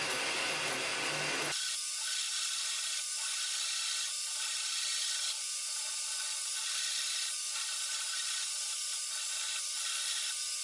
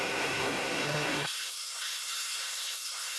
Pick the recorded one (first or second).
first